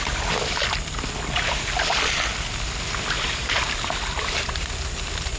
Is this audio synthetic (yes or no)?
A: no